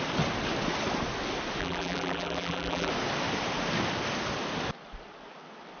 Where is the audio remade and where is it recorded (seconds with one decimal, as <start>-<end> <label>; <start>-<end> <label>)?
0.0-1.6 recorded; 1.6-2.9 remade; 2.9-5.8 recorded